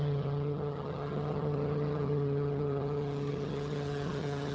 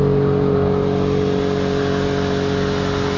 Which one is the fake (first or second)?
first